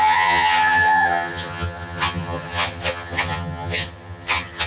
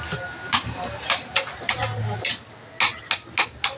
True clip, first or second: second